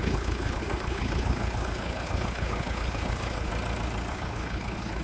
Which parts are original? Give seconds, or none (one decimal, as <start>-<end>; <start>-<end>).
3.5-4.1